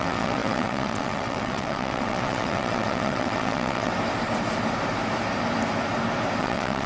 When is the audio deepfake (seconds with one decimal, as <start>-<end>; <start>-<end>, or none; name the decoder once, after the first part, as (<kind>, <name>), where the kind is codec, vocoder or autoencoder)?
0.0-3.9 (vocoder, WaveNeXt); 6.4-6.9